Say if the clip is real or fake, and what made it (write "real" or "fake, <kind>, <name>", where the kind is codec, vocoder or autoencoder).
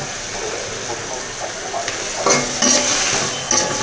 real